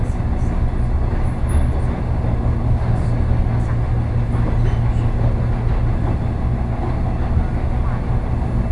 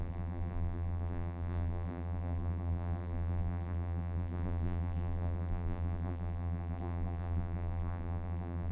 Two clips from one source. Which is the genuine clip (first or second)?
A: first